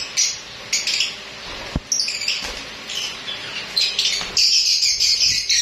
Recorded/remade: recorded